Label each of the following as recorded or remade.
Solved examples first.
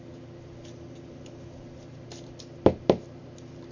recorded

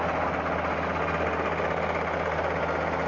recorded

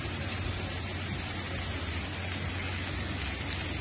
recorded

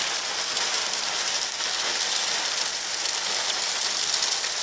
recorded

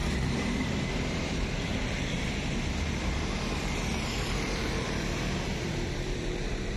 remade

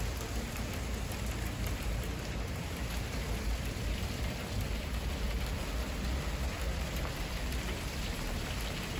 remade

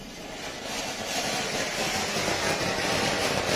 recorded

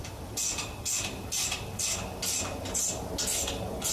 recorded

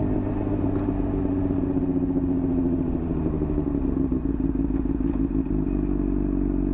recorded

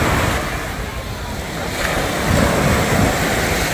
recorded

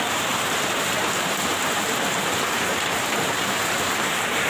remade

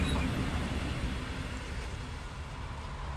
recorded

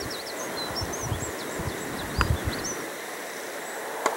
recorded